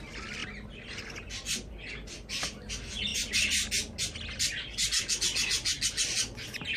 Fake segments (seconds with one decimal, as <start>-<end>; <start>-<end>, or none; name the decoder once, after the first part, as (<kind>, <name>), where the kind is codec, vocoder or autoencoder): none

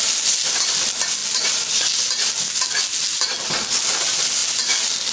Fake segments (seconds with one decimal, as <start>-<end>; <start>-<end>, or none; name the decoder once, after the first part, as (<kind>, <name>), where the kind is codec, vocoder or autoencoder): none